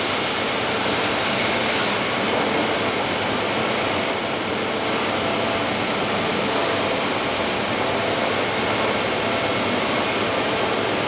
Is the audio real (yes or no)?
yes